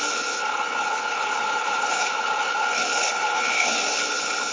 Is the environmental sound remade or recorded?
remade